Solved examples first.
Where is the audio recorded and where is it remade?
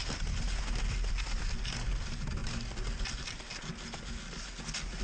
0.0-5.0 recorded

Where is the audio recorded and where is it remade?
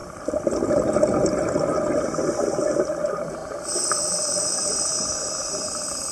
0.0-6.1 recorded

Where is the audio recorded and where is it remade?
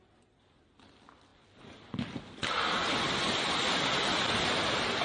0.0-1.3 recorded; 1.3-3.9 remade; 3.9-5.0 recorded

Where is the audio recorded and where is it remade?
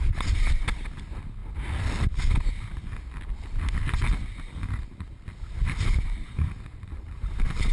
0.0-1.4 remade; 1.4-5.9 recorded; 5.9-7.7 remade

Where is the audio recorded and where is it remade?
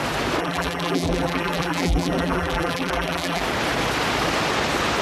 0.0-0.4 recorded; 0.4-3.4 remade; 3.4-5.0 recorded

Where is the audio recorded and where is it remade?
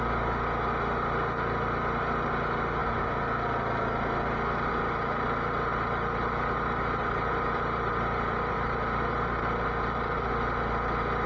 0.0-5.7 recorded; 5.7-10.3 remade; 10.3-11.3 recorded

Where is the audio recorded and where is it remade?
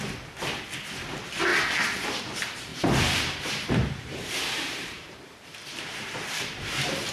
0.0-2.7 recorded; 2.7-7.1 remade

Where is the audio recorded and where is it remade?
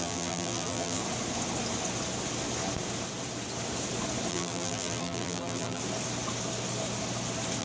0.0-1.0 remade; 1.0-4.3 recorded; 4.3-5.8 remade; 5.8-7.6 recorded